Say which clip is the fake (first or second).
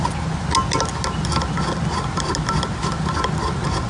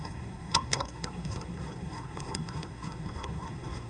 second